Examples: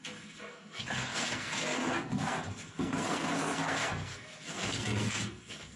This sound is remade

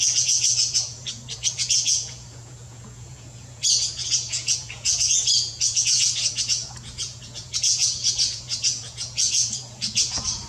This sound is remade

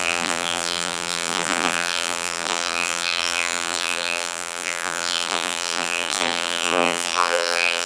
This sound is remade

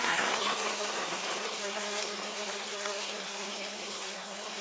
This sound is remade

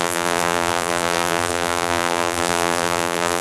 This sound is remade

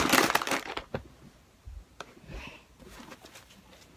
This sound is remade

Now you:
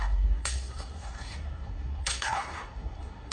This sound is remade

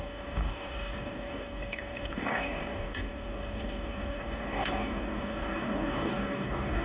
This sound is remade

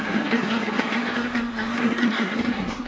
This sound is remade